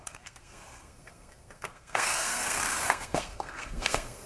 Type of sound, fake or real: fake